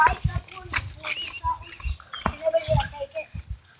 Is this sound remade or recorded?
recorded